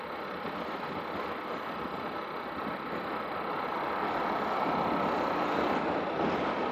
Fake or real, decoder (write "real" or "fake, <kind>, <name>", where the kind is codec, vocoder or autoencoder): real